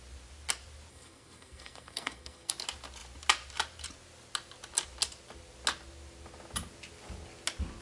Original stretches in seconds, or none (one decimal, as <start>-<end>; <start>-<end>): 0.0-0.9; 2.5-7.8